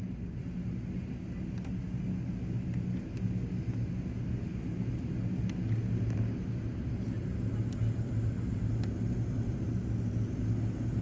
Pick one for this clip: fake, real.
real